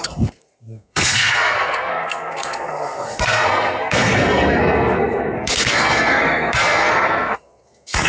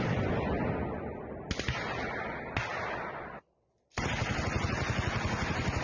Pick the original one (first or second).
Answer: second